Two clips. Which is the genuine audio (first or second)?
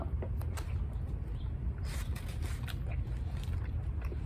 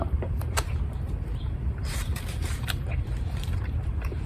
first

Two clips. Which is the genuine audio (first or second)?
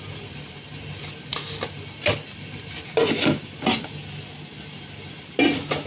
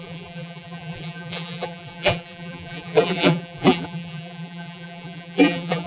first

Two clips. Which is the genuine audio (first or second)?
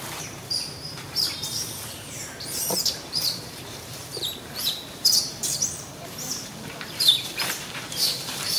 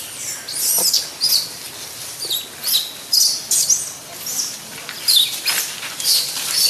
second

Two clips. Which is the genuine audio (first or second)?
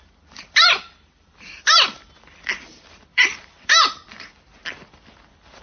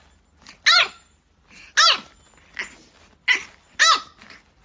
second